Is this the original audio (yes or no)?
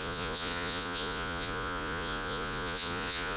no